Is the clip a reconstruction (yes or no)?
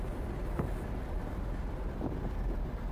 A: no